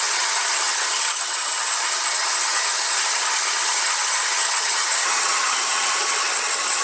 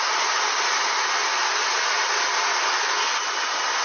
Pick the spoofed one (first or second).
first